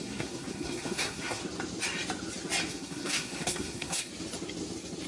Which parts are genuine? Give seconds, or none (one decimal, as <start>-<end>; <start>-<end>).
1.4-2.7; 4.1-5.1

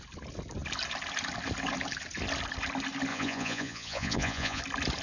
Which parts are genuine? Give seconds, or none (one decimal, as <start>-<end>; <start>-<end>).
0.0-3.1; 4.6-5.0

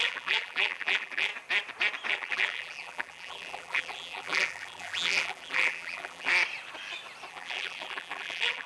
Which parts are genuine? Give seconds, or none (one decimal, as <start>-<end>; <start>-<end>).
1.3-2.1; 6.3-7.3

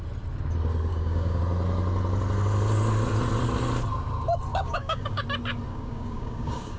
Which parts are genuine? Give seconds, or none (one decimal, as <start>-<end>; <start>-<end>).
0.0-0.9; 1.4-4.5; 5.2-5.7

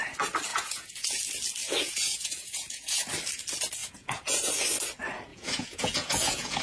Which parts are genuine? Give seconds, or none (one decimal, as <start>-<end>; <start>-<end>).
0.0-0.5; 1.2-1.6; 3.1-3.8; 4.5-5.3